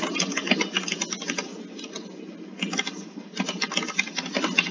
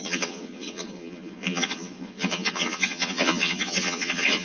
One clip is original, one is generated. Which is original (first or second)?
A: first